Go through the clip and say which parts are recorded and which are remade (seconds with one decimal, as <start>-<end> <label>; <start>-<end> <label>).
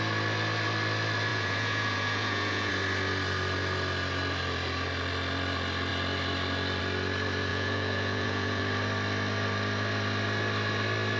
0.0-1.3 recorded; 1.3-2.7 remade; 2.7-7.5 recorded; 7.5-8.6 remade; 8.6-11.2 recorded